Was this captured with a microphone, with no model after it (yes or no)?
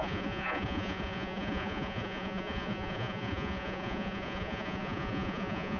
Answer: no